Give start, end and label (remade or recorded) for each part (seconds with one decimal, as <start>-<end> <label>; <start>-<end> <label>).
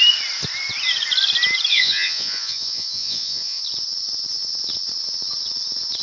0.0-1.7 recorded; 1.7-3.6 remade; 3.6-6.0 recorded